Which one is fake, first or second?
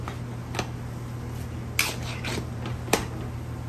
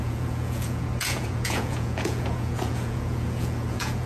second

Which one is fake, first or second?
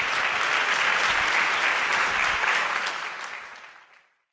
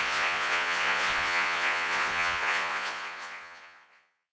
second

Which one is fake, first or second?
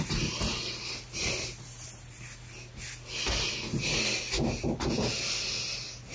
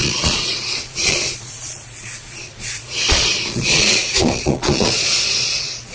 second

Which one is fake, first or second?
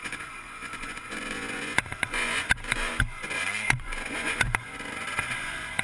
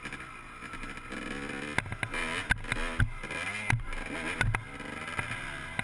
first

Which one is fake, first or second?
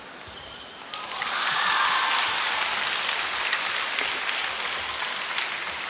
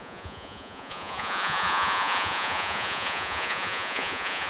second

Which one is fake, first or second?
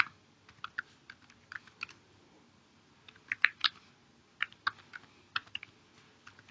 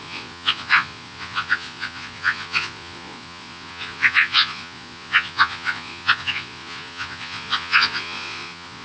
second